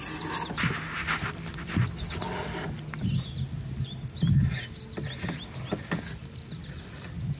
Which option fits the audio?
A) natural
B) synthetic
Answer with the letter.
A